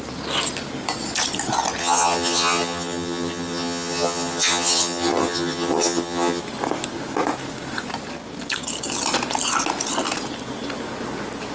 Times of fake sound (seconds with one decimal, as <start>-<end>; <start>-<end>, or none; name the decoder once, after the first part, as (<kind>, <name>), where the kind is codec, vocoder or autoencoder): 1.8-6.4 (vocoder, HiFi-GAN)